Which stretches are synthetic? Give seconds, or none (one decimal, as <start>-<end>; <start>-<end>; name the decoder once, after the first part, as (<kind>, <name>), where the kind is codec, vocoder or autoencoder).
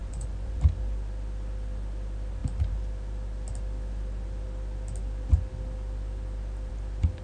0.0-0.6 (vocoder, Vocos)